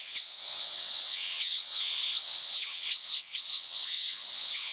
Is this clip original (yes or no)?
no